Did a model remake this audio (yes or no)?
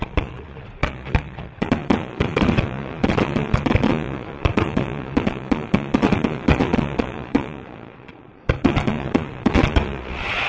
yes